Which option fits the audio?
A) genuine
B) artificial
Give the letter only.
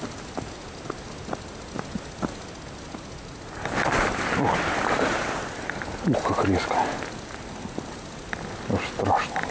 A